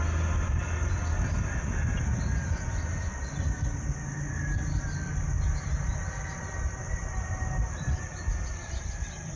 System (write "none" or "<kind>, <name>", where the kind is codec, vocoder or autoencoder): none